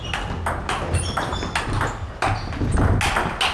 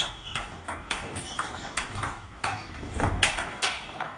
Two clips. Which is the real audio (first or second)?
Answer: first